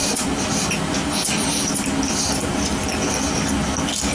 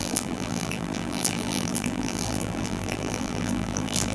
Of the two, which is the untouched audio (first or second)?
first